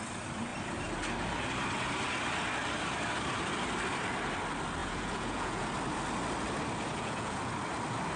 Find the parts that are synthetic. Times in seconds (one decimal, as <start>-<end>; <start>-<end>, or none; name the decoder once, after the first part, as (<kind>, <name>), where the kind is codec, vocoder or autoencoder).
4.8-5.7 (vocoder, Vocos); 6.9-7.5